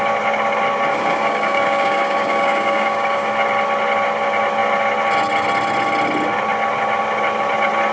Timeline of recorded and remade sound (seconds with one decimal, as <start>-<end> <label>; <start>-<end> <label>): 0.0-0.9 recorded; 0.9-3.3 remade; 3.3-7.9 recorded

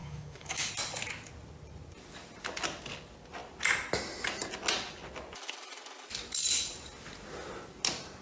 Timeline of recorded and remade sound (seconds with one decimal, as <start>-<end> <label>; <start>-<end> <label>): 0.0-0.7 remade; 0.7-8.2 recorded

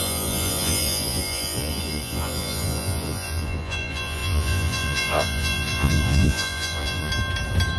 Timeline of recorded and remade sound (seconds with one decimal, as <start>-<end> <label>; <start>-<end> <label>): 0.0-7.1 remade; 7.1-7.8 recorded

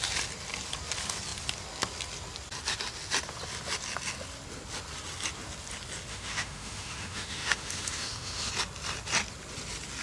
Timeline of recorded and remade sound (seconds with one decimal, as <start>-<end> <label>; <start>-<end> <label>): 0.0-6.1 recorded; 6.1-8.5 remade; 8.5-10.0 recorded

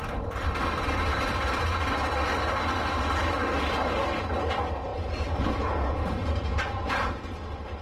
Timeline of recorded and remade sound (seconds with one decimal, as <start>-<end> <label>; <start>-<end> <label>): 0.0-4.9 recorded; 4.9-7.2 remade; 7.2-7.8 recorded